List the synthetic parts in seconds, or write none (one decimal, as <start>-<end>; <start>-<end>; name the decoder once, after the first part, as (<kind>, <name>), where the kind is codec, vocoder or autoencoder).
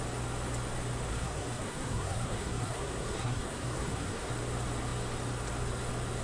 1.1-4.3 (codec, SNAC)